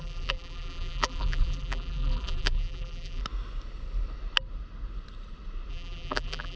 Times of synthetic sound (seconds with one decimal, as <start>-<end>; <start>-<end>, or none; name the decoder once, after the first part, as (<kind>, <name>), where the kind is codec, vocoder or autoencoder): 0.0-3.2 (vocoder, BigVGAN v2); 5.7-6.6